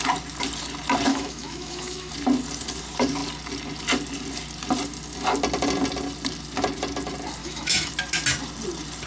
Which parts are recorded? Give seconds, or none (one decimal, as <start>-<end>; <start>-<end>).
0.0-1.1; 2.1-7.4; 7.9-9.1